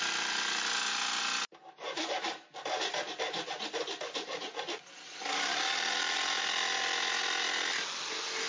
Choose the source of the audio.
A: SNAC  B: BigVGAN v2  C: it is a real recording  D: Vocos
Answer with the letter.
C